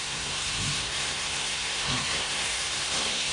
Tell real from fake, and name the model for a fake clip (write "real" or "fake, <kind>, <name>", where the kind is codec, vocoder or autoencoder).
fake, codec, SNAC